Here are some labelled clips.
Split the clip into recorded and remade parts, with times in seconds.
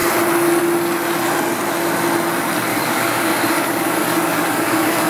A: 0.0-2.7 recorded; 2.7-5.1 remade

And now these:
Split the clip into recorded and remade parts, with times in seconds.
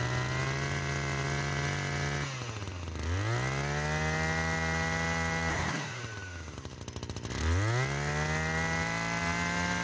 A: 0.0-5.5 recorded; 5.5-6.0 remade; 6.0-9.8 recorded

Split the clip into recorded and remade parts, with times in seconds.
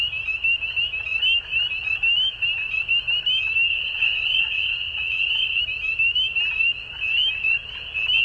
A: 0.0-3.7 recorded; 3.7-5.6 remade; 5.6-8.2 recorded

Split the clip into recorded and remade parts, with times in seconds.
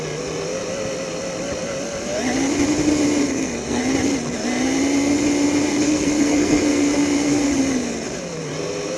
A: 0.0-3.2 recorded; 3.2-3.8 remade; 3.8-5.7 recorded; 5.7-7.6 remade; 7.6-9.0 recorded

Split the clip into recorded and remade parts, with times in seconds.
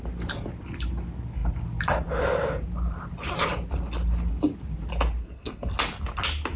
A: 0.0-5.2 recorded; 5.2-5.7 remade; 5.7-6.6 recorded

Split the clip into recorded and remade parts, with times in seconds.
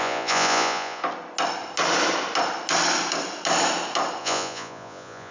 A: 0.0-1.0 remade; 1.0-4.2 recorded; 4.2-5.3 remade